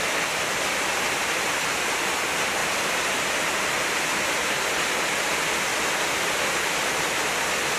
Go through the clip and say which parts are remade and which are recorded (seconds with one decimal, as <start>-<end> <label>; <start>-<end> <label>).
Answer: 0.0-2.6 recorded; 2.6-3.4 remade; 3.4-7.8 recorded